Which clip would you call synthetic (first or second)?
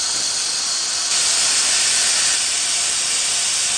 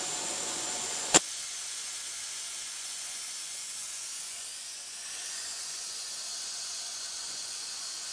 second